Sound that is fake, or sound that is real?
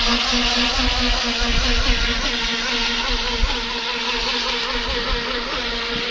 real